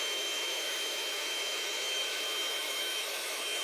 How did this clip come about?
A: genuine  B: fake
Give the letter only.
B